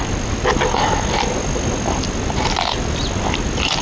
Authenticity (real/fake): real